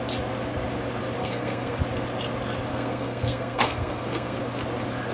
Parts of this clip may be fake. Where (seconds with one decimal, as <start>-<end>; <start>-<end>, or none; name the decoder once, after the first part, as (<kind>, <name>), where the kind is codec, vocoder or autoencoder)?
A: 1.2-1.8 (codec, SNAC); 2.7-4.4